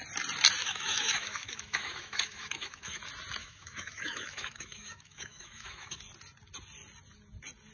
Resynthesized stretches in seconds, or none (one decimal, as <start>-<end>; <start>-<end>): 0.6-3.0; 3.4-6.0